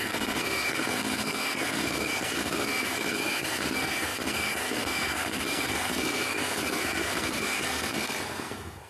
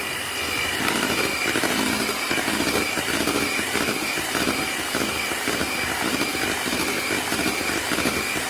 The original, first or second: second